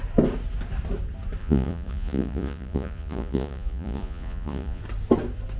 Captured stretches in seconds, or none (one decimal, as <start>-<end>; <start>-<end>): 0.0-1.4; 4.8-5.6